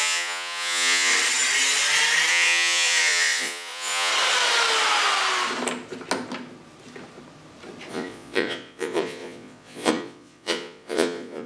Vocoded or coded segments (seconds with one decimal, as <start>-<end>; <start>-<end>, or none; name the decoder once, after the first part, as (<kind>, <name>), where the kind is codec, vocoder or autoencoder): 0.0-1.1 (vocoder, Vocos); 2.3-4.1; 7.9-11.5